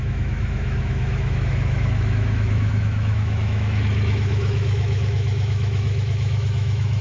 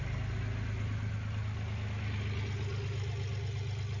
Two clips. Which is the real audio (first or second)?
second